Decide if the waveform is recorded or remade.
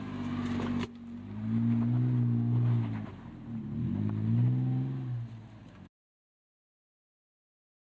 recorded